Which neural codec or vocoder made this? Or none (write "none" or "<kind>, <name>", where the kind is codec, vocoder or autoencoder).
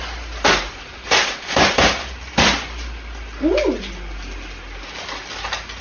none